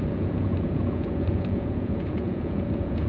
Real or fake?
fake